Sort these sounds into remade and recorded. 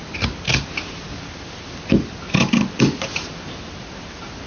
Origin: recorded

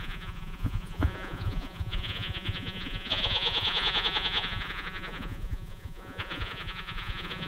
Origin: remade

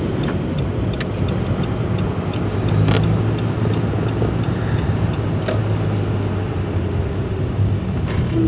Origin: recorded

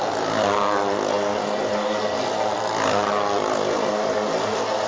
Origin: recorded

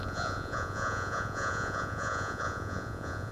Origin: remade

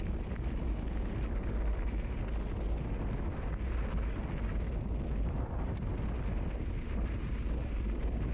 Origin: recorded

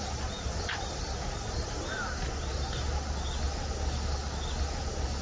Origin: recorded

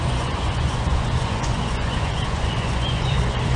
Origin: remade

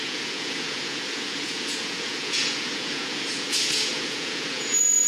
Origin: remade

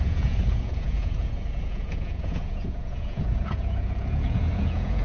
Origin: remade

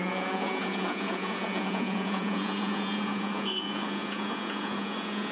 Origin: remade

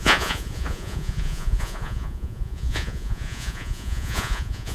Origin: remade